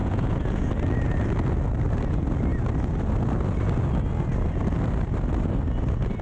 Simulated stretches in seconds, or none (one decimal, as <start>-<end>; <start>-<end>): 0.0-0.7